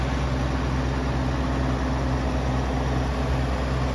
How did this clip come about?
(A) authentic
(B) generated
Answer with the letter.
A